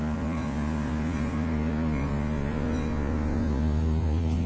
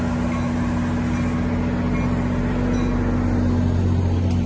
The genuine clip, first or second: second